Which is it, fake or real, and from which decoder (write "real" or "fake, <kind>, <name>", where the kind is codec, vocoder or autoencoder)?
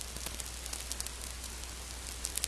real